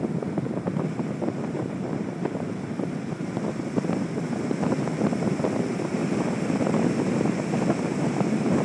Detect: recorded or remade recorded